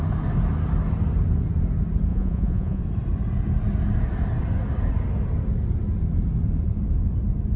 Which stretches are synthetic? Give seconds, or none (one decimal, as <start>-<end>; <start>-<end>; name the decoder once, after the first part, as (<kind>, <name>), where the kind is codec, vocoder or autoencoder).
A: 2.1-2.8 (vocoder, Vocos)